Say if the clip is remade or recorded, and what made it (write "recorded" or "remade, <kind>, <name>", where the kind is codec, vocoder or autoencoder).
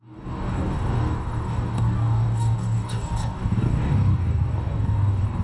remade, codec, DAC